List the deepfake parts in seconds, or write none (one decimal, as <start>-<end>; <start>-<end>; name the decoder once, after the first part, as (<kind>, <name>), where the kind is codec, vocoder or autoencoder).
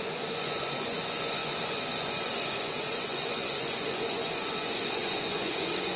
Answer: 0.0-6.0 (vocoder, Vocos)